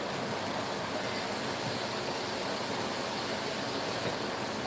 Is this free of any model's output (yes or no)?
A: yes